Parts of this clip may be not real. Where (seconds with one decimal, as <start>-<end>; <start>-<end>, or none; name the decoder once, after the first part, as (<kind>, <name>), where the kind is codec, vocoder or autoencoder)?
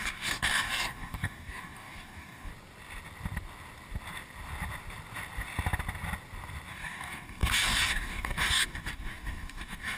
0.0-2.5 (codec, DAC); 6.7-10.0